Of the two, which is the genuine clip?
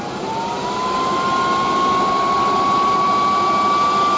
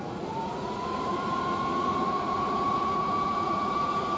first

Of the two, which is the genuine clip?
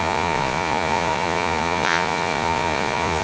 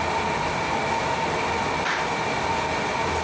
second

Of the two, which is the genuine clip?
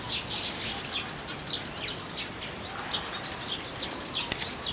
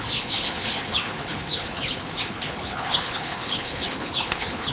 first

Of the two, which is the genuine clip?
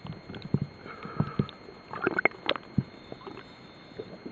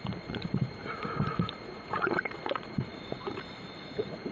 first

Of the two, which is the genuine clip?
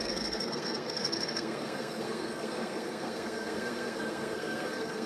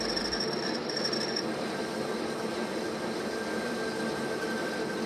second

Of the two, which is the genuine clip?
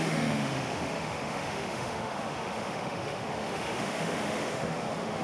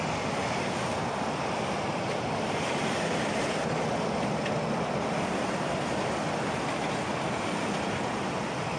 second